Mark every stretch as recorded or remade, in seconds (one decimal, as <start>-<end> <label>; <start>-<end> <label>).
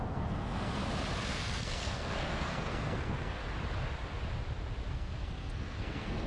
0.0-0.8 remade; 0.8-1.3 recorded; 1.3-3.4 remade; 3.4-4.9 recorded; 4.9-6.3 remade